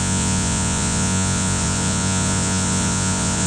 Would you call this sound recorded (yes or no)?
no